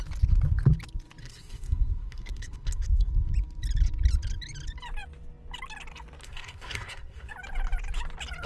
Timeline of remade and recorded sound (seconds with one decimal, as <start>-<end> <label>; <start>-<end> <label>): 0.0-1.2 recorded; 1.2-3.1 remade; 3.1-6.2 recorded; 6.2-7.3 remade; 7.3-8.5 recorded